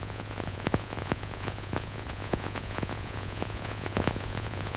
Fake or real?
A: fake